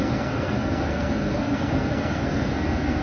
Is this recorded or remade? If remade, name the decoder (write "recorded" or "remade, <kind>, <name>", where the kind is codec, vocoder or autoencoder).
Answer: remade, codec, SNAC